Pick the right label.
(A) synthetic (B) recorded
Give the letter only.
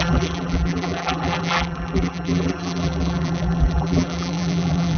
A